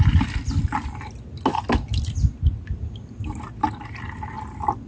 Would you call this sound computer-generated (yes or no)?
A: no